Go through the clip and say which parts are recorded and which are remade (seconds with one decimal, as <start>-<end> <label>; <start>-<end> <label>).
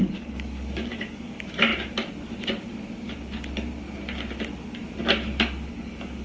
0.0-1.7 remade; 1.7-5.4 recorded; 5.4-6.2 remade